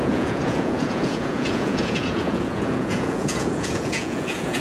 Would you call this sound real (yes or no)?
no